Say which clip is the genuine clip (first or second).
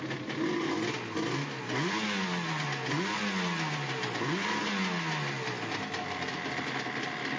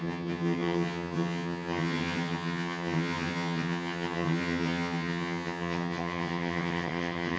first